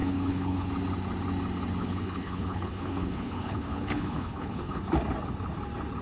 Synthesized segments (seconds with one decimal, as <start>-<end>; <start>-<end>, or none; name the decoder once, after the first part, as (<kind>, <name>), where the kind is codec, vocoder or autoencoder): 0.0-0.7 (codec, HILCodec); 1.8-4.8